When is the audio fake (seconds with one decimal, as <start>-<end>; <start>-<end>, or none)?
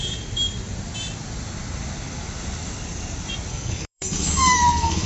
3.5-5.1